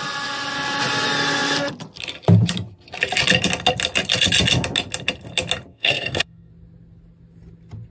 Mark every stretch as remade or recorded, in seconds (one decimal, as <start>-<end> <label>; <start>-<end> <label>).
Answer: 0.0-5.7 recorded; 5.7-6.5 remade; 6.5-7.9 recorded